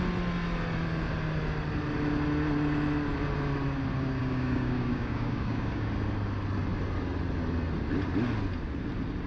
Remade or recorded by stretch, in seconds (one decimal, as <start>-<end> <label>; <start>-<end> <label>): 0.0-4.2 recorded; 4.2-5.9 remade; 5.9-9.3 recorded